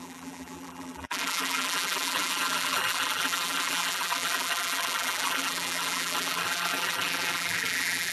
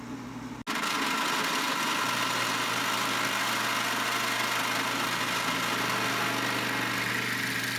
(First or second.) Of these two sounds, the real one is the second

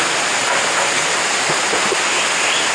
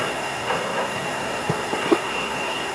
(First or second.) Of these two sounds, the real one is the first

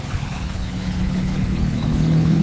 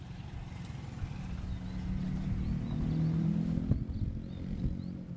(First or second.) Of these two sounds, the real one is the second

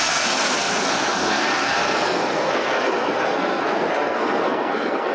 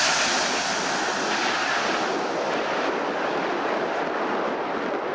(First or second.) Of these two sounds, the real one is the second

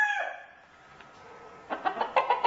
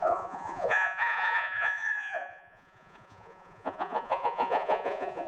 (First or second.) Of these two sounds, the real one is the first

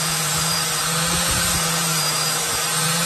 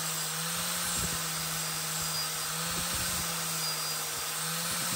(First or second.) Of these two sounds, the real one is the second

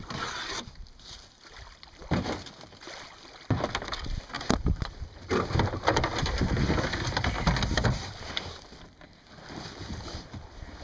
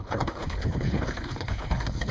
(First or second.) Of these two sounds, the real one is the first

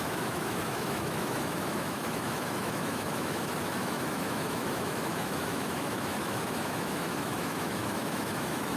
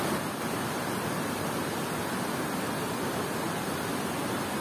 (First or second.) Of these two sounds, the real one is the second